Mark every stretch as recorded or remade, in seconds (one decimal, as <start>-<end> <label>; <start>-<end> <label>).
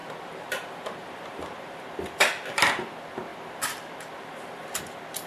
0.0-2.9 remade; 2.9-3.3 recorded; 3.3-4.8 remade; 4.8-5.3 recorded